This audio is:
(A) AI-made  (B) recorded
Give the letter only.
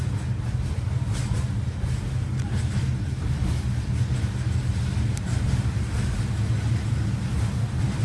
B